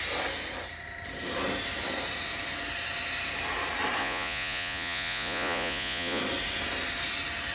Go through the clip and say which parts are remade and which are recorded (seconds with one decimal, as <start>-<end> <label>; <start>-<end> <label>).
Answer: 0.0-4.0 recorded; 4.0-6.2 remade; 6.2-7.5 recorded